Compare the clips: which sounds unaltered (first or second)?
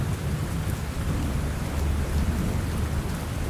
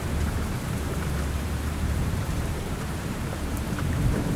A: first